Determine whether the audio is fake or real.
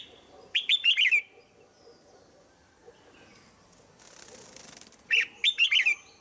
real